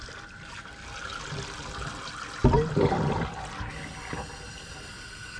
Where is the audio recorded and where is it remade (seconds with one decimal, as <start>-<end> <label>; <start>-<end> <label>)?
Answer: 0.0-5.4 recorded